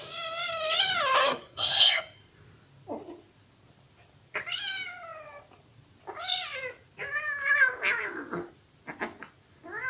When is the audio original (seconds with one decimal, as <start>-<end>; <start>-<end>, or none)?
0.0-1.2; 2.0-9.9